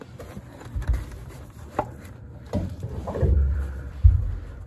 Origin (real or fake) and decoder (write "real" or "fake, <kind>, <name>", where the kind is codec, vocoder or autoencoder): fake, vocoder, BigVGAN v2